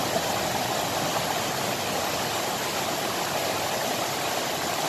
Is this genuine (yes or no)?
yes